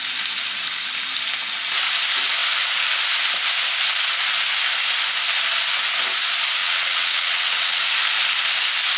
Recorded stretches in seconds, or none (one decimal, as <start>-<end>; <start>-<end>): 0.0-6.6; 7.8-9.0